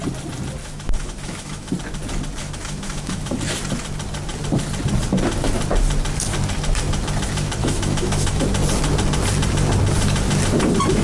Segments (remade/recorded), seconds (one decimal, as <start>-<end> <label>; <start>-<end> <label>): 0.0-0.6 recorded; 0.6-1.7 remade; 1.7-2.4 recorded; 2.4-3.2 remade; 3.2-7.6 recorded; 7.6-8.4 remade; 8.4-11.0 recorded